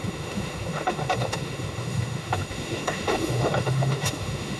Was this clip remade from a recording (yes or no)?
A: yes